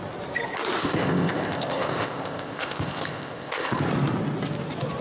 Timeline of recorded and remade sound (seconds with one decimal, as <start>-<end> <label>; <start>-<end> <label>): 0.0-0.8 recorded; 0.8-3.8 remade; 3.8-5.0 recorded